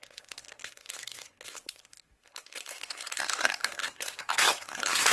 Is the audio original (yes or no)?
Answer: no